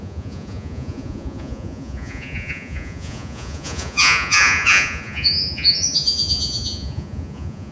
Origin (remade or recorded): remade